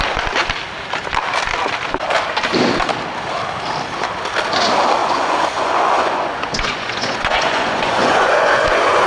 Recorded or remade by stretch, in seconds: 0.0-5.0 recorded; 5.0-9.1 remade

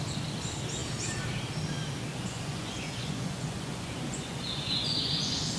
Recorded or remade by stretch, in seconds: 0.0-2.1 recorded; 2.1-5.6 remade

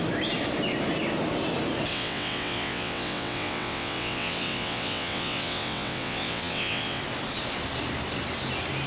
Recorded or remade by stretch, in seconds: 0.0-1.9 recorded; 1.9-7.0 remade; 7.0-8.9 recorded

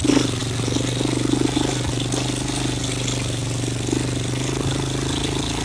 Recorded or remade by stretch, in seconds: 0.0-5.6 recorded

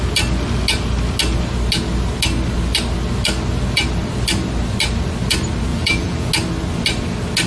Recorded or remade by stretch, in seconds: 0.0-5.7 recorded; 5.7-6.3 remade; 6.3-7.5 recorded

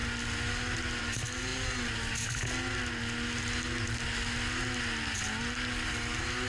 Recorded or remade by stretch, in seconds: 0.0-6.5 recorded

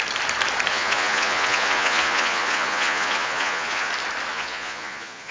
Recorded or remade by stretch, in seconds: 0.0-0.7 recorded; 0.7-3.9 remade; 3.9-4.3 recorded; 4.3-5.3 remade